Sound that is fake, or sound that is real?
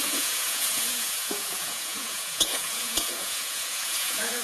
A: fake